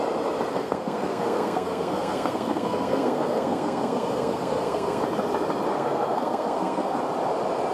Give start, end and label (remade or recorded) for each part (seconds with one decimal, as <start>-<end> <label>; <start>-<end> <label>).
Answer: 0.0-0.5 recorded; 0.5-5.0 remade; 5.0-5.7 recorded; 5.7-7.0 remade; 7.0-7.7 recorded